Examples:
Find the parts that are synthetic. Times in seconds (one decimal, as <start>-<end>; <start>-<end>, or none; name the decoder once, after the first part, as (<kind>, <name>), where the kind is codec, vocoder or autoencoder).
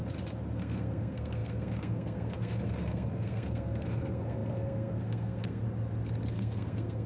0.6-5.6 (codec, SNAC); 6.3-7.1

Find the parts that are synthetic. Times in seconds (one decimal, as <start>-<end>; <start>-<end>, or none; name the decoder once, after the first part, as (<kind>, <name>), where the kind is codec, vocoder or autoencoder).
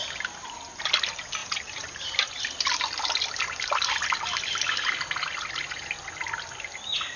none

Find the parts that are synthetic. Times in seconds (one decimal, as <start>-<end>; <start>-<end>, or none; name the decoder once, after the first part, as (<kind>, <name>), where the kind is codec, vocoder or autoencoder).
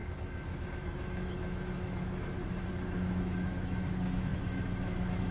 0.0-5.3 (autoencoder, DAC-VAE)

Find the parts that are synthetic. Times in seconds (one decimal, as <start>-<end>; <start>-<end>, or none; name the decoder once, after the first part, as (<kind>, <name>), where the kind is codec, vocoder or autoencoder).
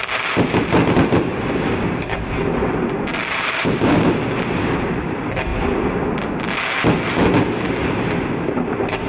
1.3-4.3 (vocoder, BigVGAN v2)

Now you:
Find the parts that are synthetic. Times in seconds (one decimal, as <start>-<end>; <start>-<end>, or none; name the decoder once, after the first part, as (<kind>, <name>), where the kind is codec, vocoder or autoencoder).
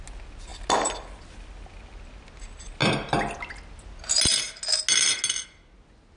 none